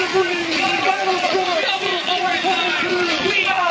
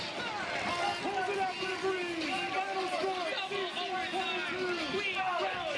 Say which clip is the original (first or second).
second